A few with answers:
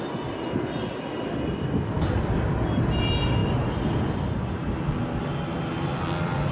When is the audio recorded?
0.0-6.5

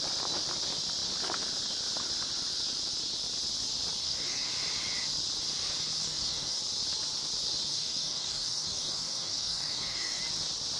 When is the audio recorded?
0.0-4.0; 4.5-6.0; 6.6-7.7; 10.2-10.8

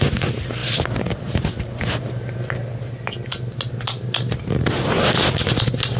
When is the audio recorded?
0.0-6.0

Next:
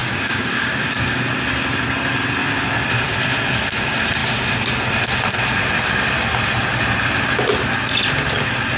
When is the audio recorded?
1.3-8.8